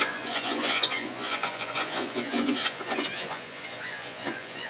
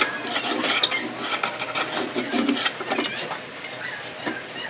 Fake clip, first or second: first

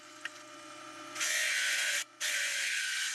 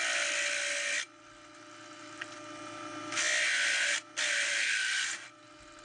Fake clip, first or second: first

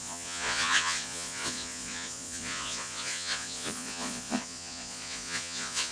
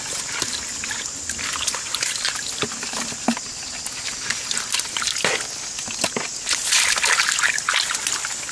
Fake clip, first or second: first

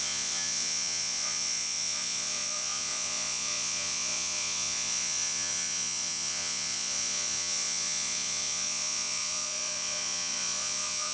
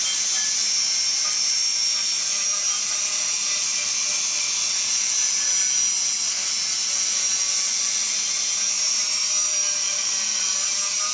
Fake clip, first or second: first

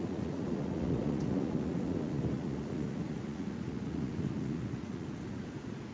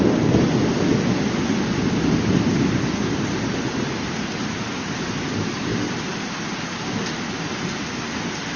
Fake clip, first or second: first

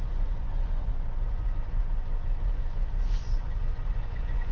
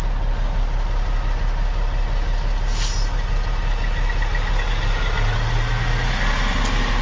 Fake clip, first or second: first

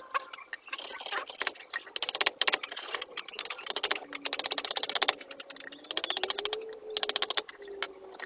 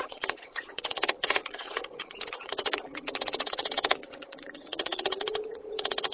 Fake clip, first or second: second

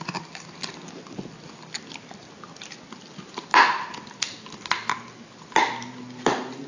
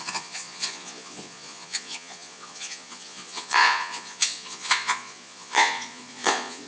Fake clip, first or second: second